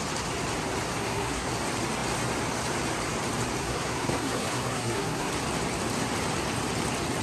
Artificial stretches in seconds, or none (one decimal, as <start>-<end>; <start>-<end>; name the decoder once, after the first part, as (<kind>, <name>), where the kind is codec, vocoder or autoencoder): 1.0-1.5 (codec, SNAC); 3.6-5.3